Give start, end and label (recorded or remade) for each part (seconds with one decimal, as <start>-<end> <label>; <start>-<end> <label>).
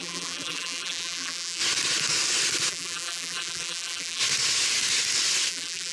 0.0-1.6 remade; 1.6-2.7 recorded; 2.7-4.2 remade; 4.2-5.5 recorded; 5.5-5.9 remade